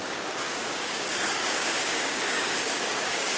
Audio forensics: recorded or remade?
remade